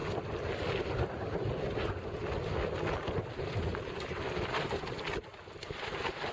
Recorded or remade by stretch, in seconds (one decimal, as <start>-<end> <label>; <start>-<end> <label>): 0.0-3.7 recorded; 3.7-4.8 remade; 4.8-5.3 recorded; 5.3-6.3 remade